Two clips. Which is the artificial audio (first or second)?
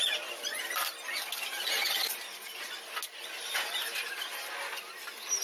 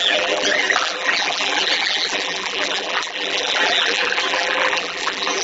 second